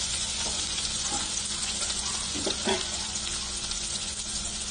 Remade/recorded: remade